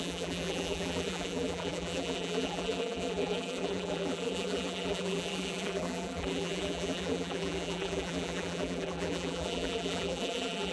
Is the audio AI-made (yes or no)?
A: yes